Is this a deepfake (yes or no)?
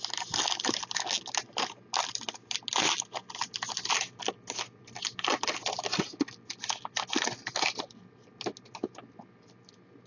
no